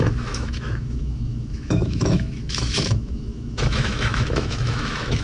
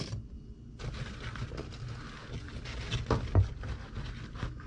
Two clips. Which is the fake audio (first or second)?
first